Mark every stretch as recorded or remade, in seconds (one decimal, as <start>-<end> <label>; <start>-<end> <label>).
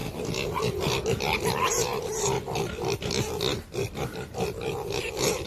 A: 0.0-5.5 recorded